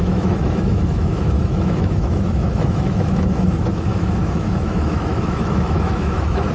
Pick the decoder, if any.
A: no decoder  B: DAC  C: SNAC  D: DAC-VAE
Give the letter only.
D